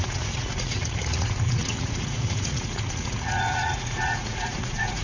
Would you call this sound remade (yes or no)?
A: yes